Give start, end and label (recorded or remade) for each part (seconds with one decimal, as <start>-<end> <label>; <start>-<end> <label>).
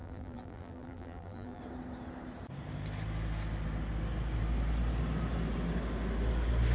0.0-1.6 remade; 1.6-6.7 recorded